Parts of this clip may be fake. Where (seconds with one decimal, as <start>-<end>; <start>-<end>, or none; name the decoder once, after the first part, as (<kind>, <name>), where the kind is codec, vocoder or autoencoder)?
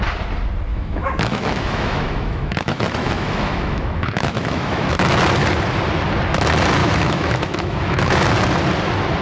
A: 0.7-4.9 (autoencoder, DAC-VAE); 6.8-8.2